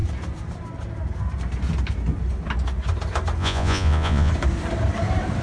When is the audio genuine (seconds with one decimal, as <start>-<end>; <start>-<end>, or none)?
0.0-3.4; 4.3-5.4